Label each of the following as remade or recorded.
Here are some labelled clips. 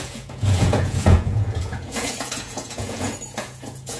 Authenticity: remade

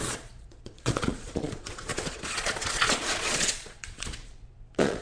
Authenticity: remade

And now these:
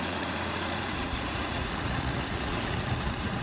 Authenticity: remade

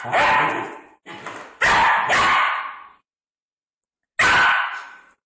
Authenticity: recorded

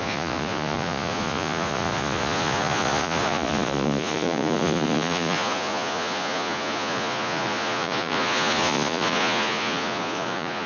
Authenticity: remade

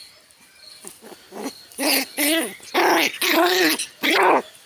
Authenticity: recorded